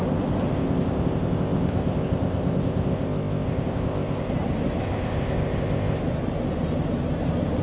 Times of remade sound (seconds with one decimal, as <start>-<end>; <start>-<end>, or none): 0.5-4.3; 4.8-6.0